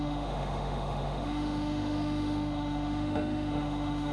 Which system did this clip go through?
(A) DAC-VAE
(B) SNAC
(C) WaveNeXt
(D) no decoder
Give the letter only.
A